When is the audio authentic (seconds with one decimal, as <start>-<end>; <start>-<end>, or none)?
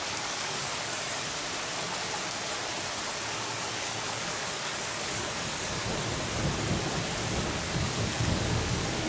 1.4-3.3; 5.8-7.7